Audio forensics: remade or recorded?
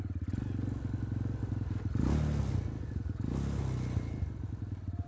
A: recorded